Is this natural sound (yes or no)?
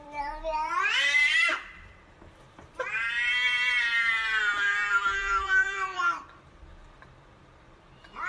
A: no